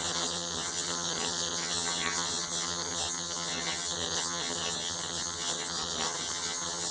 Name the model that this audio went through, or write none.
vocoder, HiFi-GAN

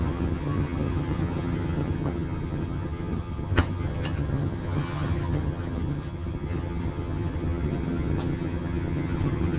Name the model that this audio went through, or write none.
vocoder, HiFi-GAN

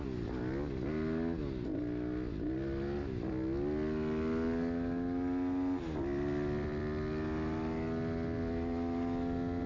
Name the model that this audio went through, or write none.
none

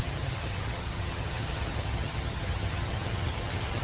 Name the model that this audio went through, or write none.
vocoder, HiFi-GAN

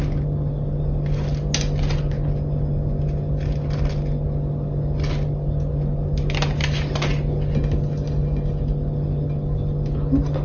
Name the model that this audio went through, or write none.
none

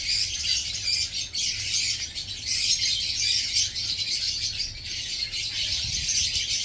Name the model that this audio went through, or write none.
none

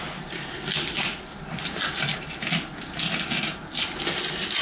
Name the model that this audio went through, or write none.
none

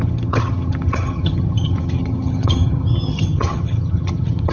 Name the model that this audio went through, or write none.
vocoder, HiFi-GAN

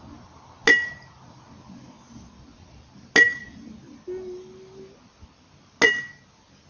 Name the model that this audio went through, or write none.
none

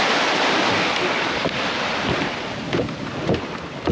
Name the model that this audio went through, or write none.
none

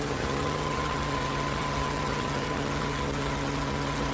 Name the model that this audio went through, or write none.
vocoder, HiFi-GAN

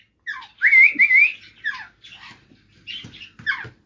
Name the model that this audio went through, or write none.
none